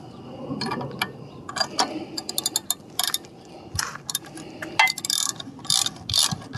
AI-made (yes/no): no